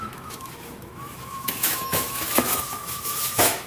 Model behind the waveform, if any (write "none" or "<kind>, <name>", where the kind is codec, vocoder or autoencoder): autoencoder, DAC-VAE